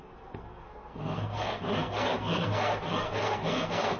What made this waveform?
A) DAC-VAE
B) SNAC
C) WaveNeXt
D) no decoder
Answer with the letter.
B